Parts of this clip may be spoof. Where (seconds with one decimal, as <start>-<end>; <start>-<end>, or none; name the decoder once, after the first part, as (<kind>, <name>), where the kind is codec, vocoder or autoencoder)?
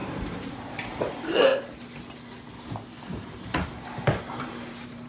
0.0-1.5 (vocoder, BigVGAN v2); 3.1-5.1